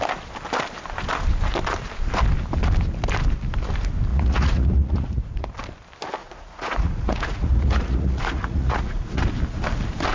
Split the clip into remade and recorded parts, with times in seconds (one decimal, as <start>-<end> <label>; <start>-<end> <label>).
0.0-4.1 recorded; 4.1-5.5 remade; 5.5-6.2 recorded; 6.2-9.2 remade; 9.2-10.1 recorded